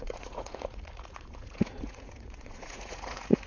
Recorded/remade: remade